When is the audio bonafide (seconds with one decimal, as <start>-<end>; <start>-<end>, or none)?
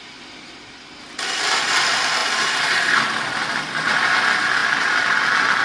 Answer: 0.0-5.6